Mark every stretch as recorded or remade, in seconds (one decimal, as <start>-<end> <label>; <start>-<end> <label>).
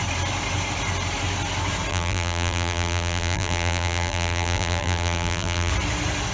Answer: 0.0-1.9 recorded; 1.9-5.7 remade; 5.7-6.3 recorded